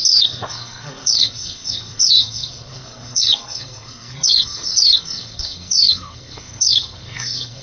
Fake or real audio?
fake